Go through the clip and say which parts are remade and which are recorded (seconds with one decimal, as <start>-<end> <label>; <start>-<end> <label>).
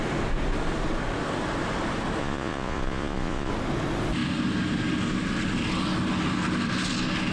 0.0-2.2 recorded; 2.2-3.5 remade; 3.5-7.3 recorded